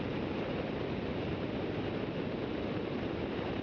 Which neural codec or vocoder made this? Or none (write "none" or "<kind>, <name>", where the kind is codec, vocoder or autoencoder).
none